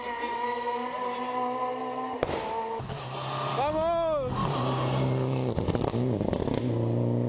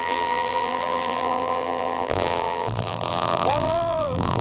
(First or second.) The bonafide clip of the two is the first